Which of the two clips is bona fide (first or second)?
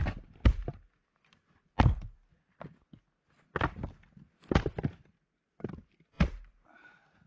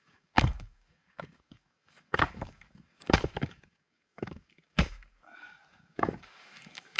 first